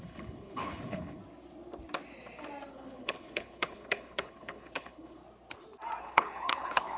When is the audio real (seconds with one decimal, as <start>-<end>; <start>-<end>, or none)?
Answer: 1.2-2.7; 5.2-6.0